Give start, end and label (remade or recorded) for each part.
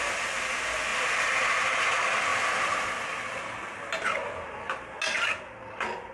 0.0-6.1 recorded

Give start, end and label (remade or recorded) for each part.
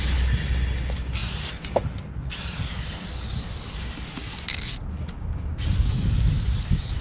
0.0-7.0 recorded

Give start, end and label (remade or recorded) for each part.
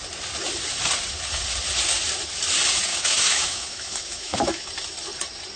0.0-2.9 recorded; 2.9-4.7 remade; 4.7-5.6 recorded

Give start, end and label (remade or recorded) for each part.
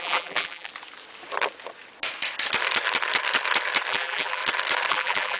0.0-0.7 remade; 0.7-3.9 recorded; 3.9-4.4 remade; 4.4-4.9 recorded; 4.9-5.4 remade